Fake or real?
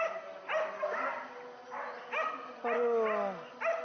real